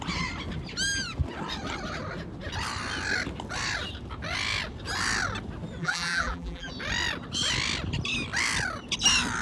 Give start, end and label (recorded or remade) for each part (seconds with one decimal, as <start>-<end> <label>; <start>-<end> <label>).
0.0-5.8 recorded; 5.8-6.7 remade; 6.7-9.4 recorded